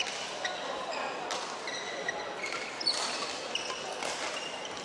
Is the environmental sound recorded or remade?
recorded